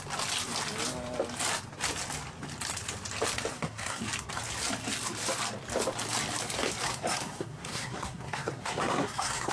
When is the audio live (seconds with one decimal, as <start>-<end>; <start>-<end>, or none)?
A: 0.0-3.5; 4.0-6.9